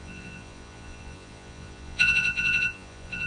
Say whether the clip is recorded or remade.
remade